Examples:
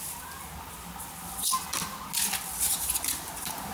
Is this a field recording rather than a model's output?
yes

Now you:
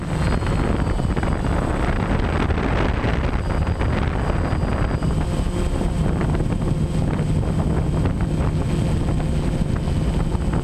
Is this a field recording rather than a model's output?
yes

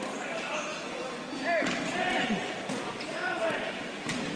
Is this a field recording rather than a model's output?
yes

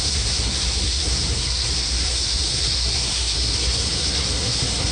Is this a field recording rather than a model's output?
no